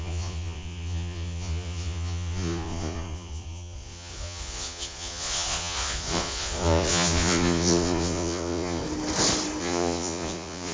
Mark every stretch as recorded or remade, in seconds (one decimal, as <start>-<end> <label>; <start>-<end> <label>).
0.0-8.8 remade; 8.8-9.6 recorded; 9.6-10.7 remade